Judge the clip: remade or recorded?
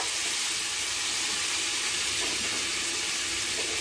remade